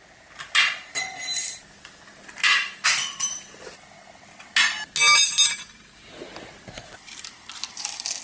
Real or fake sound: real